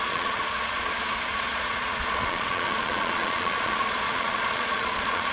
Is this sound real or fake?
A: fake